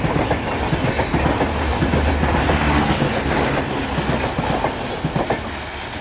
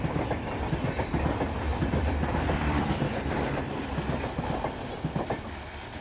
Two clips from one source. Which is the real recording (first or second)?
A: first